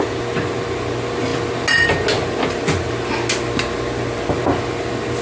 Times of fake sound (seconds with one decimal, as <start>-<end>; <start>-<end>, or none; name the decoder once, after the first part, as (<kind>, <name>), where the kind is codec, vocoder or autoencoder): none